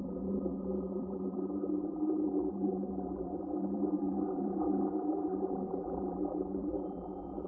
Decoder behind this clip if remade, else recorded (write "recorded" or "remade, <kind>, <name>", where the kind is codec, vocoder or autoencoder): remade, vocoder, BigVGAN v2